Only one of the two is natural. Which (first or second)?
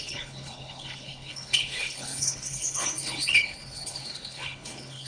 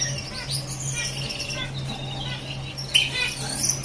second